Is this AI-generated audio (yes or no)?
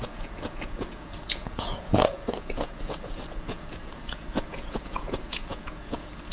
yes